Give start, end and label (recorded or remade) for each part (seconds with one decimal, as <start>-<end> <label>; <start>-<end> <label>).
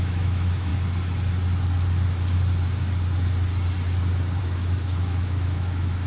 0.0-0.7 remade; 0.7-4.4 recorded; 4.4-6.1 remade